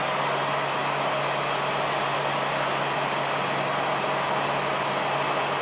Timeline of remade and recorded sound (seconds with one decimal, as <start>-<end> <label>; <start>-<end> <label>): 0.0-5.6 recorded